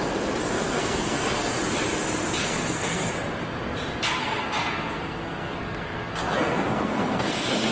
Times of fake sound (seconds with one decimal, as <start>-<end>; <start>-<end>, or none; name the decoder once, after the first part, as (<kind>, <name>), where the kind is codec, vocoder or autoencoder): 0.4-1.5 (codec, SNAC); 2.4-3.1; 4.2-7.7